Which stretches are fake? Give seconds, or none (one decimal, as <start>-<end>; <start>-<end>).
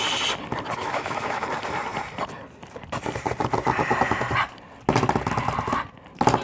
0.8-1.4